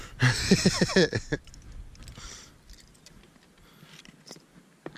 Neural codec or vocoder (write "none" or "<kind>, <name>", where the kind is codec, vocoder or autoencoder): none